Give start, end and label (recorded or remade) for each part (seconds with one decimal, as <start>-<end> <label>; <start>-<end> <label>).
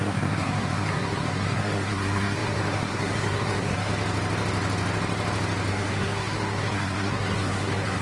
0.0-3.9 remade; 3.9-5.7 recorded; 5.7-8.0 remade